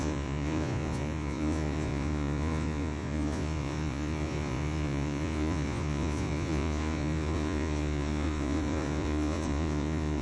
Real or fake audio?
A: fake